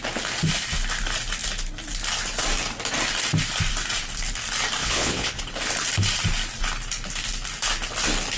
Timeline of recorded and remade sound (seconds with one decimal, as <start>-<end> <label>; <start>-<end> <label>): 0.0-4.8 recorded; 4.8-5.4 remade; 5.4-8.4 recorded